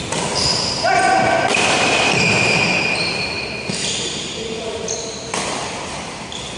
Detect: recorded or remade recorded